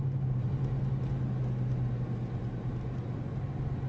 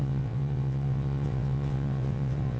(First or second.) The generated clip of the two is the second